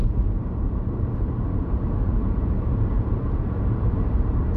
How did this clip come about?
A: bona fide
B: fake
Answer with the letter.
B